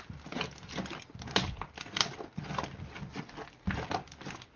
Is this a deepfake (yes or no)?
no